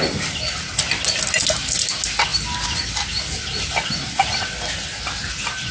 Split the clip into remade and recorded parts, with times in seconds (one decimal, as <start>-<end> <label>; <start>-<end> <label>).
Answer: 0.0-5.7 recorded